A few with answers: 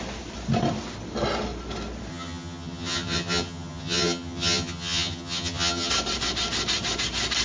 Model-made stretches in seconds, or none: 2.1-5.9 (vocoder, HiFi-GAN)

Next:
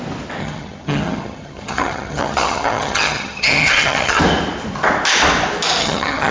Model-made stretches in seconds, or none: 0.4-4.2 (vocoder, HiFi-GAN); 5.8-6.3

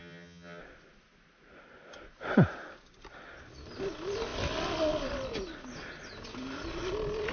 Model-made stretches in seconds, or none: 0.0-0.6 (vocoder, HiFi-GAN)

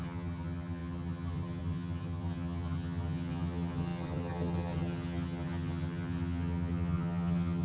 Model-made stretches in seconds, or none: 0.0-7.6 (vocoder, HiFi-GAN)

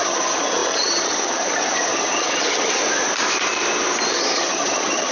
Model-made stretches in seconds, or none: 0.0-2.8 (vocoder, HiFi-GAN); 4.1-5.1